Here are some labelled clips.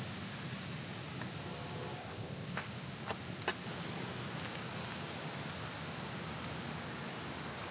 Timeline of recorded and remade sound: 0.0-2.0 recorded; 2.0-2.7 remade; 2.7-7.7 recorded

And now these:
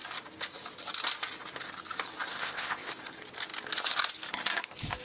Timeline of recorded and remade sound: 0.0-2.3 recorded; 2.3-2.9 remade; 2.9-5.0 recorded

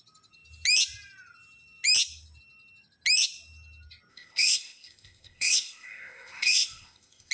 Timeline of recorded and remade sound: 0.0-4.1 recorded; 4.1-7.3 remade

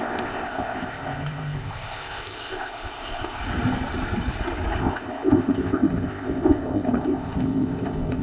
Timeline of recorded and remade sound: 0.0-3.4 remade; 3.4-4.8 recorded; 4.8-8.2 remade